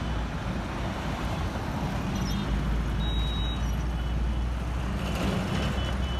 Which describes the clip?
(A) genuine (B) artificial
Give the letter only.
A